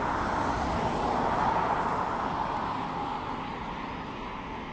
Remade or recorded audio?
recorded